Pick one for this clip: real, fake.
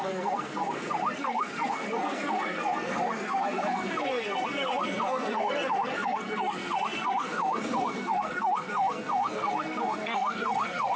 fake